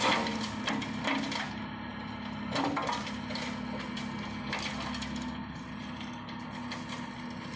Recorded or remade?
recorded